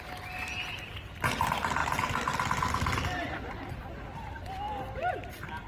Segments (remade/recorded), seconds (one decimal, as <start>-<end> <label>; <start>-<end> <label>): 0.0-5.7 recorded